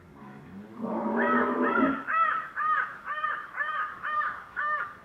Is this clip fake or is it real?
fake